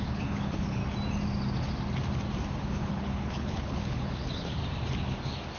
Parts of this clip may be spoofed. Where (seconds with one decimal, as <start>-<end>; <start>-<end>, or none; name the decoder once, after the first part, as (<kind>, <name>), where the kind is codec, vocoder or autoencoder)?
0.0-0.8 (codec, HILCodec); 2.6-4.6